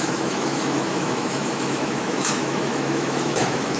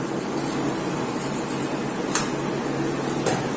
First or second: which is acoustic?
second